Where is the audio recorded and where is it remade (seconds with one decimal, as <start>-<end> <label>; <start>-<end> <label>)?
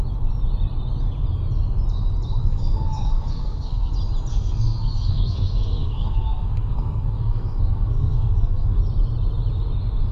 0.0-2.4 recorded; 2.4-3.9 remade; 3.9-4.3 recorded; 4.3-8.8 remade; 8.8-10.1 recorded